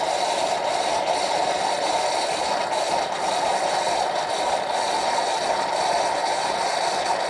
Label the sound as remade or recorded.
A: recorded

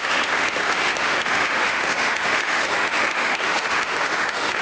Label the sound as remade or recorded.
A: remade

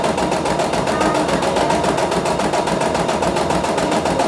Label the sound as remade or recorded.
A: recorded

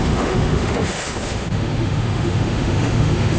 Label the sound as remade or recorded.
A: remade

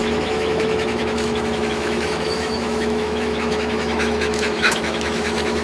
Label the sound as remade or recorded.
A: remade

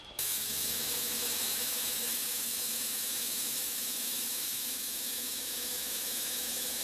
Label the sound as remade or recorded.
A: remade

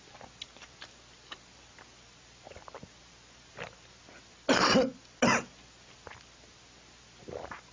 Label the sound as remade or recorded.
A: recorded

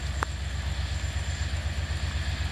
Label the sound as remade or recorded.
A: recorded